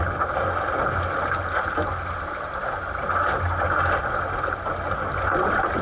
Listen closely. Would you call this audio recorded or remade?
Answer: recorded